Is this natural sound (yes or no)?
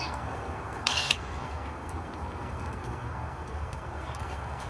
no